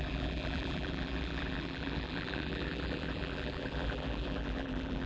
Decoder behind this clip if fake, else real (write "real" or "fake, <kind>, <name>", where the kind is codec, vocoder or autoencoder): fake, vocoder, BigVGAN v2